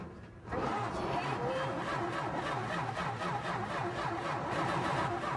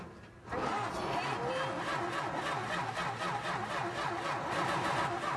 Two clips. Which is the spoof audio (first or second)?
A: first